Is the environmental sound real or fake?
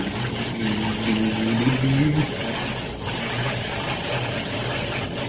real